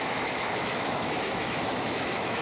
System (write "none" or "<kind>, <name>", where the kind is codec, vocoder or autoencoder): autoencoder, DAC-VAE